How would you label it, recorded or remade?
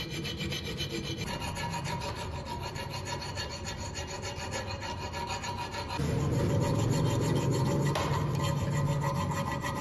recorded